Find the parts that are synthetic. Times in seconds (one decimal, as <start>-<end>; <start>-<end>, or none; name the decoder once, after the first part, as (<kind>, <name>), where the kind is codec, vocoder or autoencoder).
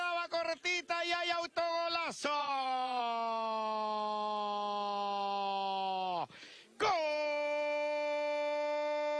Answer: 2.4-3.0 (vocoder, Vocos)